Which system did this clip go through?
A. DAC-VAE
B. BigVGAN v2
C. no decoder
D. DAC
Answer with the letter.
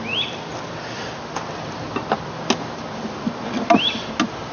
C